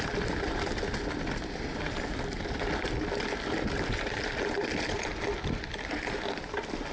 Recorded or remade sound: recorded